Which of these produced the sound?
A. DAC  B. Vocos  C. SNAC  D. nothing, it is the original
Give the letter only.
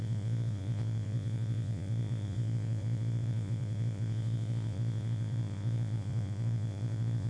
B